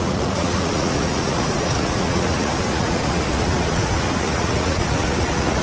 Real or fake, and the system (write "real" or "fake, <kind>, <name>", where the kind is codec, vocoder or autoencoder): fake, vocoder, Vocos